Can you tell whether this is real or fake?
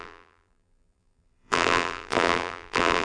fake